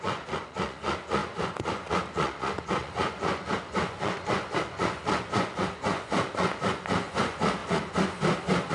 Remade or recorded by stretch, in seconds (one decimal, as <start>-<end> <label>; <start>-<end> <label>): 0.0-8.7 remade